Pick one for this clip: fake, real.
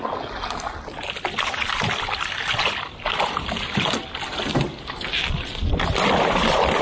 real